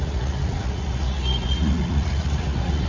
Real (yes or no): no